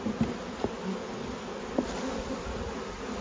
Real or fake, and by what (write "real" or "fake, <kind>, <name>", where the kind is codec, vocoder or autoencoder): real